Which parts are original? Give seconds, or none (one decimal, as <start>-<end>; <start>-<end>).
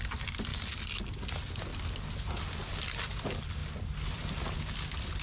0.0-5.2